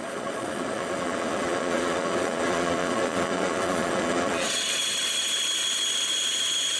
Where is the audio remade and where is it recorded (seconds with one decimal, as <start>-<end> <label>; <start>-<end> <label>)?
0.0-4.8 remade; 4.8-6.8 recorded